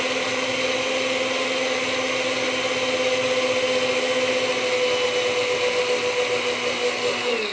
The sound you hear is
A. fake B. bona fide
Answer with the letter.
B